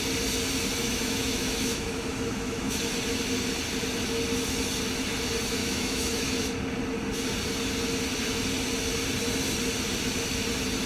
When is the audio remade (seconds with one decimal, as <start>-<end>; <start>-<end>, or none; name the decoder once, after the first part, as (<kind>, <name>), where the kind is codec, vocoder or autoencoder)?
0.8-3.2 (autoencoder, DAC-VAE); 5.6-6.3